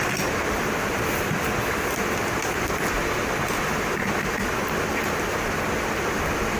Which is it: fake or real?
real